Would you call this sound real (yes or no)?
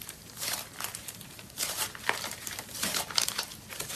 no